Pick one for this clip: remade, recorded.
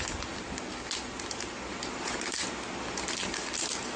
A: recorded